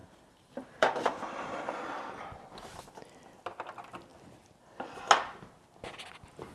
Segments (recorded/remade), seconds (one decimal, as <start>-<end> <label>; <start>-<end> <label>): 0.0-1.7 remade; 1.7-6.5 recorded